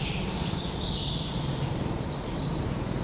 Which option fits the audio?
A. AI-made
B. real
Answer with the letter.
B